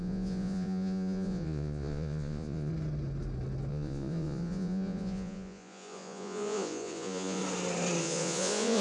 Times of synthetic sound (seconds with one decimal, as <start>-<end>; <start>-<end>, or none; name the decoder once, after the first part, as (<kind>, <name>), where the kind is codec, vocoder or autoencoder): 0.0-2.7 (vocoder, Vocos); 3.7-7.4; 8.0-8.8